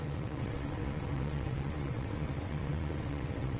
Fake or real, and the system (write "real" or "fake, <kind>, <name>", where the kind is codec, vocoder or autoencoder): fake, vocoder, WaveNeXt